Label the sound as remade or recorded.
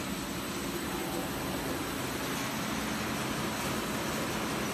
recorded